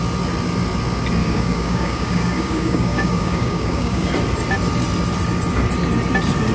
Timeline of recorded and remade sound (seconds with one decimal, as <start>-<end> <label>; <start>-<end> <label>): 0.0-1.2 recorded; 1.2-4.1 remade; 4.1-6.5 recorded